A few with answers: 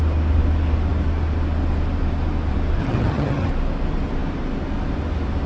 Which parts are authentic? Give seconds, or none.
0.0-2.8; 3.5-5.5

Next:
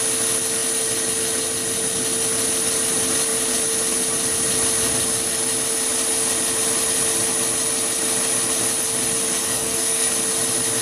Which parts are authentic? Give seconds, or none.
0.0-9.4; 10.1-10.8

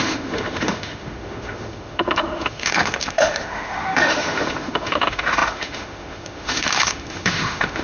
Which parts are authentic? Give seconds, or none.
none

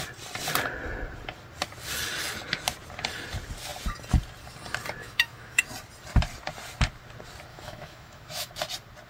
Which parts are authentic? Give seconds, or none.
0.0-5.0; 5.6-7.5; 8.5-9.1

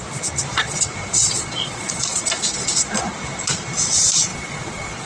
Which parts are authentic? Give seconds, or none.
0.0-0.5; 2.2-4.3

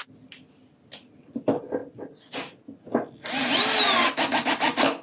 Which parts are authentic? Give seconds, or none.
0.0-5.0